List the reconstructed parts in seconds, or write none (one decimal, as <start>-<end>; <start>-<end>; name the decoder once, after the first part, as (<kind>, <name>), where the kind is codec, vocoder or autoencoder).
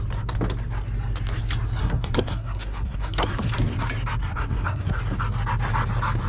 1.8-3.5 (codec, SNAC); 4.2-5.0